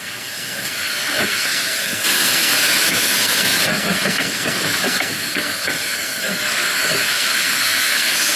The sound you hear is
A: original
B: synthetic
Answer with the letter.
B